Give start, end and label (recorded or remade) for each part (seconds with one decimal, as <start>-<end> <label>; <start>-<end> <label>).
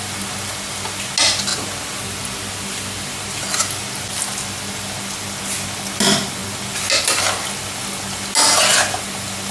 0.0-9.5 recorded